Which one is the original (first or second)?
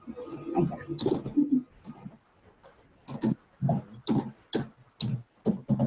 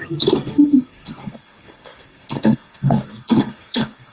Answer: first